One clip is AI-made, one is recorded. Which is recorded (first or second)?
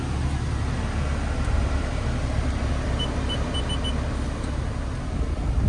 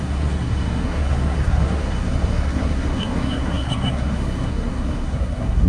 first